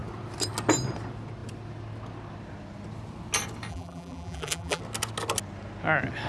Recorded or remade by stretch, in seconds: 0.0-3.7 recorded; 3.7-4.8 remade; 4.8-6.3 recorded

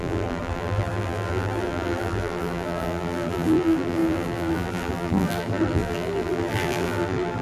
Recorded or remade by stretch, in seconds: 0.0-7.4 remade

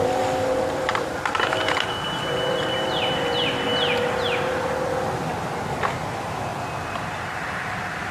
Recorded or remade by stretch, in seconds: 0.0-5.3 remade; 5.3-5.9 recorded; 5.9-6.5 remade; 6.5-7.1 recorded; 7.1-8.1 remade

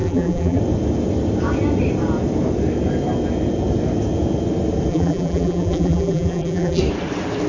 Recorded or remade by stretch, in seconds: 0.0-0.6 remade; 0.6-4.9 recorded; 4.9-6.8 remade; 6.8-7.5 recorded

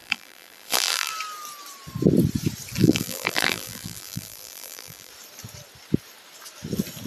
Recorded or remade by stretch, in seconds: 0.0-1.1 remade; 1.1-2.8 recorded; 2.8-5.1 remade; 5.1-7.1 recorded

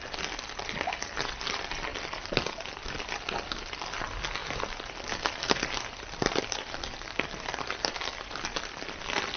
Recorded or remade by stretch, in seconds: 0.0-1.9 recorded; 1.9-3.1 remade; 3.1-4.4 recorded; 4.4-9.4 remade

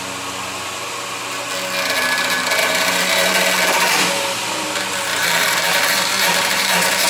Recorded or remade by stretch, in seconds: 0.0-2.6 recorded; 2.6-3.3 remade; 3.3-5.1 recorded; 5.1-7.1 remade

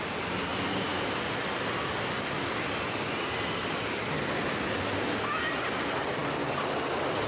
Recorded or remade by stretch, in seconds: 0.0-7.3 recorded